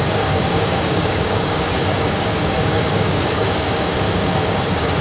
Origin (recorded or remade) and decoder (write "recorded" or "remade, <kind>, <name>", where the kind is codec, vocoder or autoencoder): remade, codec, DAC